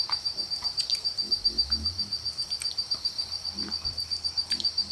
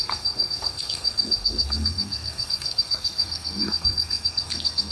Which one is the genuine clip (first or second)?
first